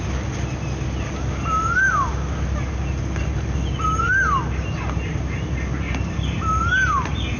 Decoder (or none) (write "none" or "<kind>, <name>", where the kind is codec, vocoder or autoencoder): none